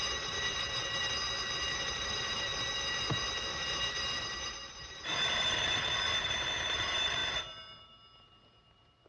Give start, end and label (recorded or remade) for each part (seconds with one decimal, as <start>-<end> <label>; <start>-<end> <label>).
0.0-1.1 remade; 1.1-1.6 recorded; 1.6-2.5 remade; 2.5-3.5 recorded; 3.5-9.1 remade